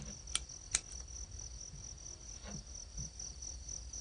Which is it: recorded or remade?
recorded